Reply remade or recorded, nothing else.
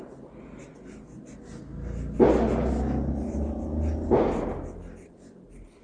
recorded